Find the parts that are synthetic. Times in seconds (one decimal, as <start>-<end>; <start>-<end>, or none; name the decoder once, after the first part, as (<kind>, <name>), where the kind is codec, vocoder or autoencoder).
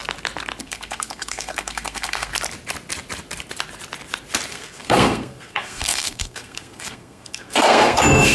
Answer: 0.6-2.3 (codec, SNAC); 4.5-8.3